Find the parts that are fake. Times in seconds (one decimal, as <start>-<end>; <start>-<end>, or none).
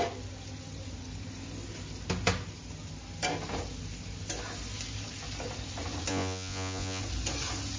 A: 6.1-7.0